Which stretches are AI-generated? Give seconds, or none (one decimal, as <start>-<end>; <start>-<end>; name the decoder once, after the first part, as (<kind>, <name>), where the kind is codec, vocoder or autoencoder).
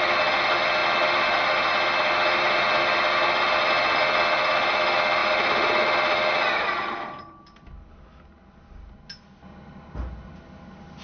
none